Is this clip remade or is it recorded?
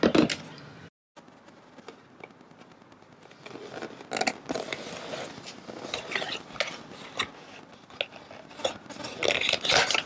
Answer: recorded